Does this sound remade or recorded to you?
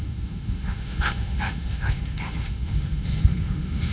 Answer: remade